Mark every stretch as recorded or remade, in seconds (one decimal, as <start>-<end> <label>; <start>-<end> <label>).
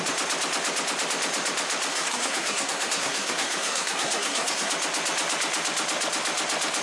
0.0-1.9 recorded; 1.9-4.7 remade; 4.7-6.8 recorded